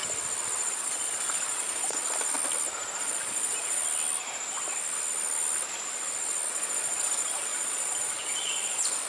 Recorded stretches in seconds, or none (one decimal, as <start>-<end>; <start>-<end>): 0.0-0.7; 2.0-3.0; 3.8-6.5